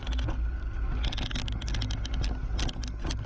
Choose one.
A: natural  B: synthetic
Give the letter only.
A